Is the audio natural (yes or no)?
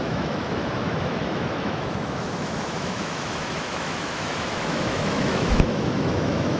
no